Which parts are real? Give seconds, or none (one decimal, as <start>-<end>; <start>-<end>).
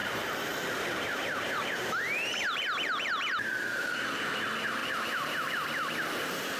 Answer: 4.0-4.8; 5.5-6.6